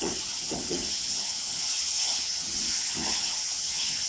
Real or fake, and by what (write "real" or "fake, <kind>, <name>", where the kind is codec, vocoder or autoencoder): fake, vocoder, HiFi-GAN